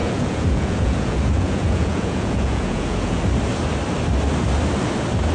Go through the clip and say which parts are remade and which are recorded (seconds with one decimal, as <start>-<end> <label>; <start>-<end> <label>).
0.0-3.2 remade; 3.2-5.3 recorded